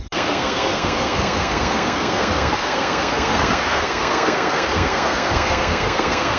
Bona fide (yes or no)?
no